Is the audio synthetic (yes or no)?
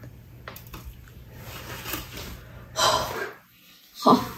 no